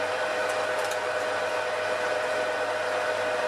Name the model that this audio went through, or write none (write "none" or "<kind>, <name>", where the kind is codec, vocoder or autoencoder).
none